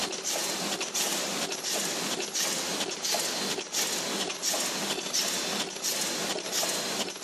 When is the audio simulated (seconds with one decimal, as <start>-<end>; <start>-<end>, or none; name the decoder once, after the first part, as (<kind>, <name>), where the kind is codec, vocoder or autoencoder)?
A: 0.0-2.7 (vocoder, BigVGAN v2)